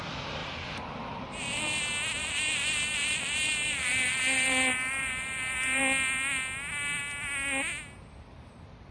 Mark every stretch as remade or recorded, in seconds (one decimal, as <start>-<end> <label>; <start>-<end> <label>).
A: 0.0-0.4 recorded; 0.4-1.8 remade; 1.8-2.2 recorded; 2.2-5.8 remade; 5.8-8.9 recorded